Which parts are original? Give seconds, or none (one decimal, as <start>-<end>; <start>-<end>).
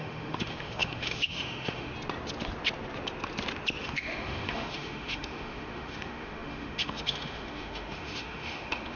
1.9-3.8